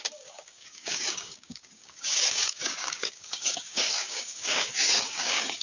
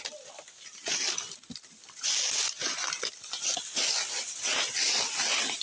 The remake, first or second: first